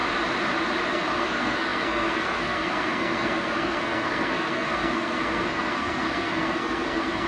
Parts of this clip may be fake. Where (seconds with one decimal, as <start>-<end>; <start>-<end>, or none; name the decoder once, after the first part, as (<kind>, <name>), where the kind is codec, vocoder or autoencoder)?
0.9-7.3 (codec, SNAC)